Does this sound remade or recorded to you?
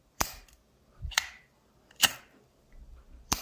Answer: recorded